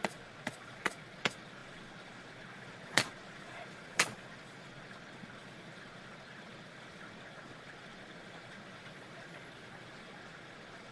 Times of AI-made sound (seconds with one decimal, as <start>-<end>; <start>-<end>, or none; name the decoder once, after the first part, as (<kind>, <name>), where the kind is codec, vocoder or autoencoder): 0.0-10.9 (vocoder, Vocos)